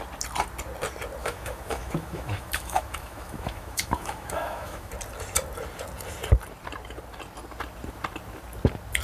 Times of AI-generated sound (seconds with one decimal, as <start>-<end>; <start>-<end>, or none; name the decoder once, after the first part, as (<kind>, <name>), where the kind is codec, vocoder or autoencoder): 1.2-4.9 (autoencoder, DAC-VAE)